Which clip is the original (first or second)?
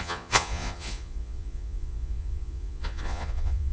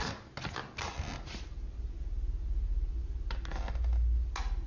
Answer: second